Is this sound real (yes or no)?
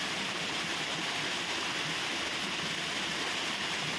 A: yes